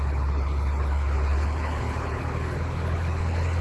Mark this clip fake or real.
fake